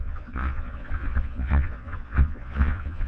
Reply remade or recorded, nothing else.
remade